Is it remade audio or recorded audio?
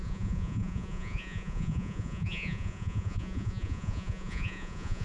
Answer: remade